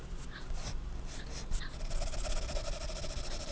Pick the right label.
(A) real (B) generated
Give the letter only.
A